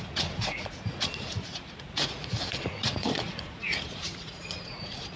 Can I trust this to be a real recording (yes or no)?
no